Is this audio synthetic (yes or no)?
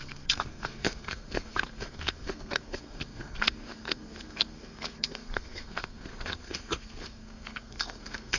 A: yes